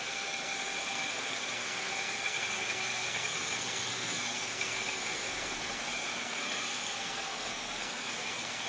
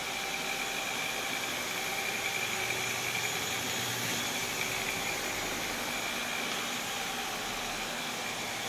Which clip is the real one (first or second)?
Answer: second